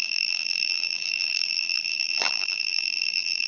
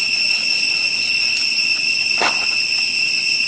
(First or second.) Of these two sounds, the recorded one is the second